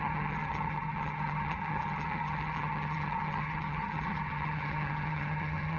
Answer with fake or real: fake